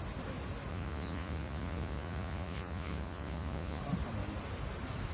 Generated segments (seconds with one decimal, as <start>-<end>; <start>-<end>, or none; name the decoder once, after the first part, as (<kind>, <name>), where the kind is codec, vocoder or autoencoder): 0.7-3.8 (vocoder, Vocos)